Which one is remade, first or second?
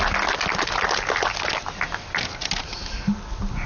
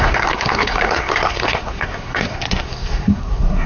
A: second